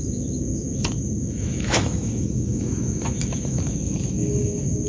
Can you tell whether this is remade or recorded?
remade